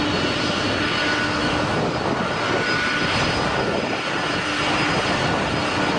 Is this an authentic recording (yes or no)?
yes